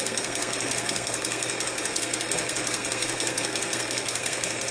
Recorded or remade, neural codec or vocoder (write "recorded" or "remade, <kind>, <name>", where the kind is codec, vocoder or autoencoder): remade, codec, SNAC